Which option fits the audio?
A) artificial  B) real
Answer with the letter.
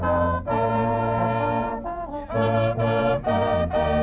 A